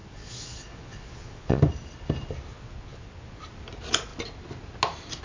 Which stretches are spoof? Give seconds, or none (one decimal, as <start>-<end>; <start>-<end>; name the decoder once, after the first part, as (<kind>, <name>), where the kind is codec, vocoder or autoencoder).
0.0-1.6 (vocoder, Vocos); 2.5-3.4